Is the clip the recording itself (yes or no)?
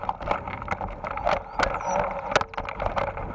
yes